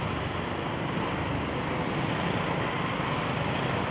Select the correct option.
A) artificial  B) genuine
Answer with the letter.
B